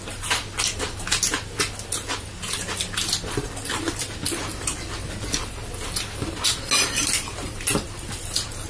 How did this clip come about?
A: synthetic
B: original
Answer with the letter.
B